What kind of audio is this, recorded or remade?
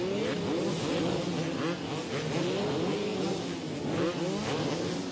recorded